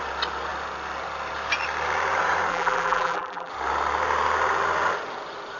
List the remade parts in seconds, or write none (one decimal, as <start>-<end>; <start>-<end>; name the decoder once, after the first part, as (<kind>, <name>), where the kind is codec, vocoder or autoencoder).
2.5-3.5 (vocoder, BigVGAN v2)